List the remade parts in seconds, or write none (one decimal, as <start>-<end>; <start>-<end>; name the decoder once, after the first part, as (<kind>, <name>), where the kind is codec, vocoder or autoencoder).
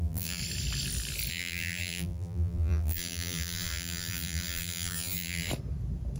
0.0-0.4 (vocoder, BigVGAN v2); 1.3-5.5